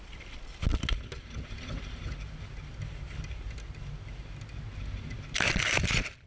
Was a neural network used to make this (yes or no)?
no